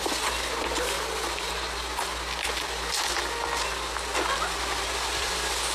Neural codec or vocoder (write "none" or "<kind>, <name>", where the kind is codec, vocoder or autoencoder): none